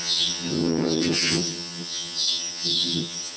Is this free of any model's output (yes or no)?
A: no